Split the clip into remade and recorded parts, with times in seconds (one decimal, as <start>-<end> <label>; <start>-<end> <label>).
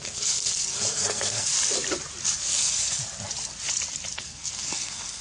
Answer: 0.0-1.5 remade; 1.5-2.4 recorded; 2.4-3.0 remade; 3.0-4.1 recorded; 4.1-5.2 remade